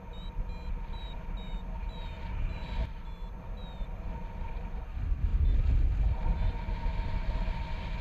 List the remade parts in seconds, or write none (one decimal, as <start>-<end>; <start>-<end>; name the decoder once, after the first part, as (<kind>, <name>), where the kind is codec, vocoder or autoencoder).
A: none